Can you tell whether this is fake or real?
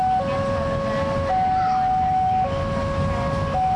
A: real